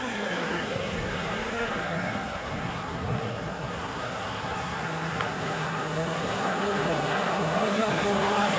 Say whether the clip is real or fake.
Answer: fake